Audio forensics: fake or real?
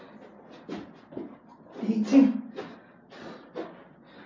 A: real